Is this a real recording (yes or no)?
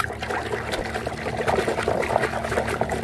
yes